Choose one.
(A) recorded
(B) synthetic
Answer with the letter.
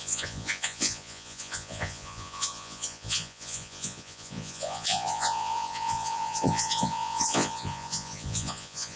B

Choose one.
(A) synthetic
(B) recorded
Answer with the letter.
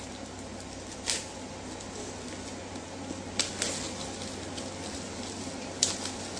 B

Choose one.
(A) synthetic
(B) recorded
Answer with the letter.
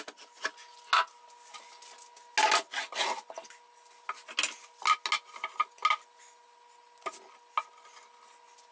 B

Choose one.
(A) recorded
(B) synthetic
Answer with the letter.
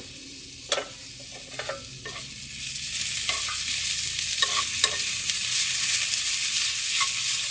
A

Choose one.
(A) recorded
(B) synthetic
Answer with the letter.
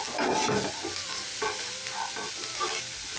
A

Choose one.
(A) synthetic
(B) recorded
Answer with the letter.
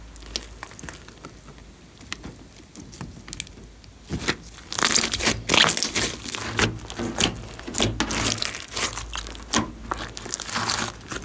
B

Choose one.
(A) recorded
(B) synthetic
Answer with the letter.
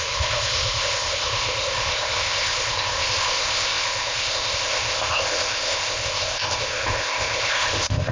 B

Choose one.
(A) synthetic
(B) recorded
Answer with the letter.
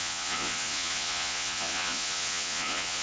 A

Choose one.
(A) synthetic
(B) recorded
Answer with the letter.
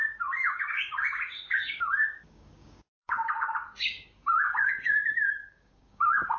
A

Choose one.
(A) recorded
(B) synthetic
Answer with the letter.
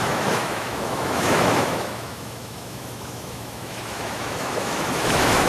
B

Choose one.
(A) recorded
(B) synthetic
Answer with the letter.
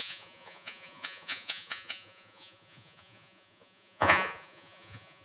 B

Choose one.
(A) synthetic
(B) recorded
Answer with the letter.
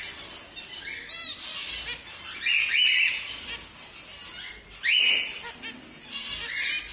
B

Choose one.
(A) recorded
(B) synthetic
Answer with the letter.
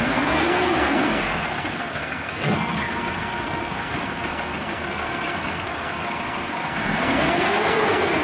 B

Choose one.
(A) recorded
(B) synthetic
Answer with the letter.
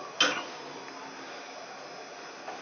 A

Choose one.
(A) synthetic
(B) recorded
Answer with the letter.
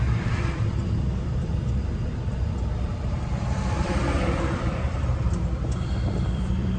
A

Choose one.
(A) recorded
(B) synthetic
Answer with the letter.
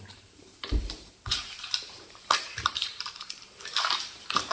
B